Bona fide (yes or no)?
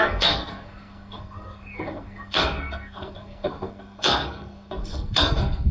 no